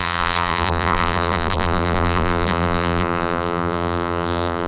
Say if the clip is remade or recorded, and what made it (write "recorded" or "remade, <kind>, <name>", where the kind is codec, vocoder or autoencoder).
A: remade, vocoder, BigVGAN v2